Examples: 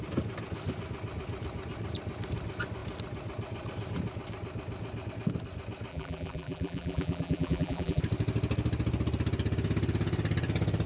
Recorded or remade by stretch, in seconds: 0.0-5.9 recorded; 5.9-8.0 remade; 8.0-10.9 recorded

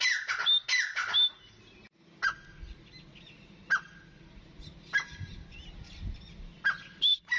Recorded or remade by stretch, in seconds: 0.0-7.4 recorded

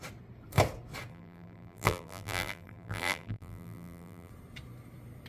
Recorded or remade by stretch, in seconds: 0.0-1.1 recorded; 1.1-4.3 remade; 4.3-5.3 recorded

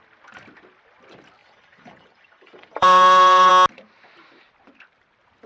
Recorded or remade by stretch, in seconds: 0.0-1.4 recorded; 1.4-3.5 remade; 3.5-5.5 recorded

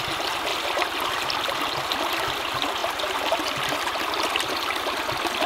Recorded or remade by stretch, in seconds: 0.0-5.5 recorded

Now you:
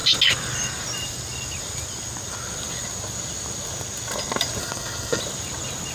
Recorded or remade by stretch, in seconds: 0.0-4.6 recorded; 4.6-5.2 remade; 5.2-5.9 recorded

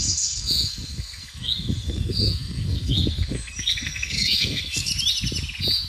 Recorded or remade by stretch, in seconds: 0.0-4.9 remade; 4.9-5.9 recorded